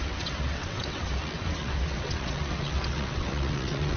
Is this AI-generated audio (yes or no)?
yes